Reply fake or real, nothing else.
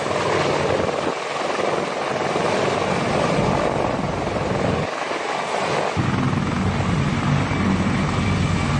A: real